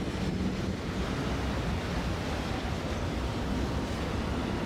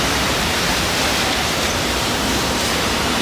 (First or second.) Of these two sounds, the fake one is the second